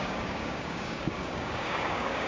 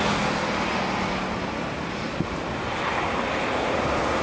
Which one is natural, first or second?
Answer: second